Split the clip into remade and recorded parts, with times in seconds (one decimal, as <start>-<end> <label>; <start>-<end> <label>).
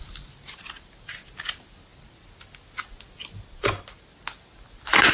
0.0-5.1 recorded